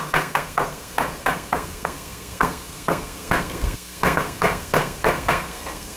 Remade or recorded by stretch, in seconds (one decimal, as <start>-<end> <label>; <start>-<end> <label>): 0.0-6.0 remade